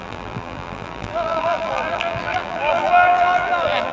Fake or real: fake